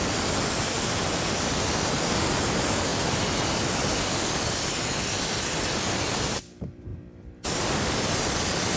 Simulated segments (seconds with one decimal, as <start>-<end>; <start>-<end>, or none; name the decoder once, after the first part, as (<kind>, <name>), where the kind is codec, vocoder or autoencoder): 0.0-8.8 (vocoder, BigVGAN v2)